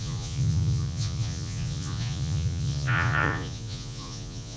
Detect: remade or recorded remade